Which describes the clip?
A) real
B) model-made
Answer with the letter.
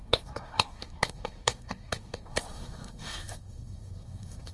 B